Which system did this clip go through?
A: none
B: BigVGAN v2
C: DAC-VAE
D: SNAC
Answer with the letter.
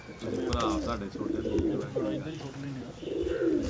A